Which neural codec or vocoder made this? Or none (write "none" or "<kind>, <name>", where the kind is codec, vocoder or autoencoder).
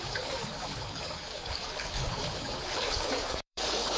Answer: codec, DAC